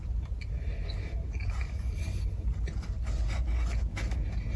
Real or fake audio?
real